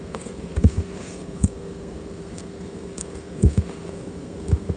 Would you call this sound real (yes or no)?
no